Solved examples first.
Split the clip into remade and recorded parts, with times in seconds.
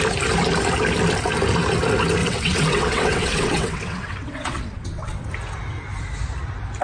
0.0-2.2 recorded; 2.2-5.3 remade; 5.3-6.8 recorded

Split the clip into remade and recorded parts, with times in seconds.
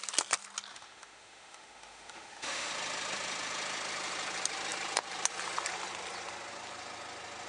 0.0-0.7 recorded; 0.7-2.7 remade; 2.7-7.5 recorded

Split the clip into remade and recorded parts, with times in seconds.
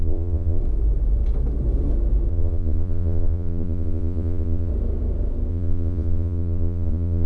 0.0-0.6 remade; 0.6-2.3 recorded; 2.3-4.7 remade; 4.7-5.5 recorded; 5.5-7.3 remade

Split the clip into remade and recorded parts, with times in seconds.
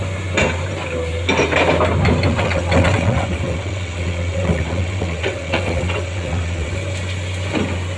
0.0-2.3 recorded; 2.3-6.7 remade; 6.7-8.0 recorded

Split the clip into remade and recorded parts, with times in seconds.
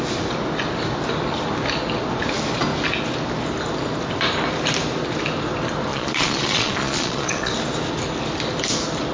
0.0-5.9 recorded; 5.9-7.5 remade; 7.5-9.1 recorded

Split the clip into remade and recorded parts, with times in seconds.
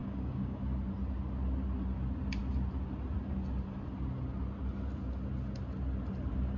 0.0-0.6 remade; 0.6-6.6 recorded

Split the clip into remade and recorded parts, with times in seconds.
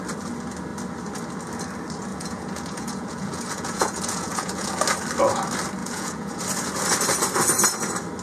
0.0-2.1 recorded; 2.1-4.7 remade; 4.7-5.8 recorded; 5.8-6.4 remade; 6.4-8.2 recorded